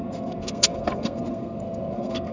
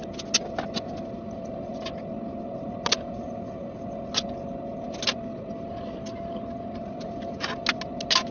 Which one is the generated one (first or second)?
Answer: first